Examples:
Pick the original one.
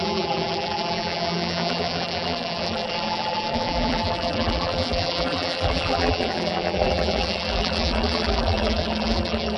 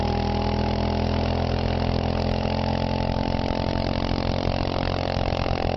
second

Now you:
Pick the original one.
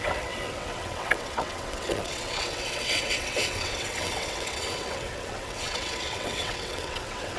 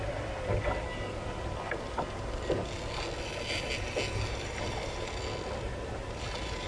second